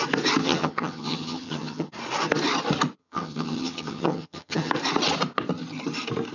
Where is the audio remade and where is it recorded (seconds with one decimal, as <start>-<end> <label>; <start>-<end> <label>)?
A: 0.0-0.4 recorded; 0.4-1.9 remade; 1.9-3.0 recorded; 3.0-4.7 remade; 4.7-6.3 recorded